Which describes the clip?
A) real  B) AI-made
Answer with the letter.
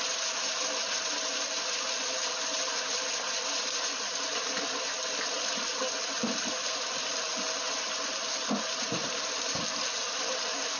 A